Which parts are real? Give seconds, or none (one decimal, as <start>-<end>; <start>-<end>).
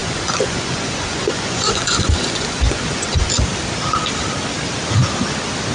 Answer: 3.3-5.7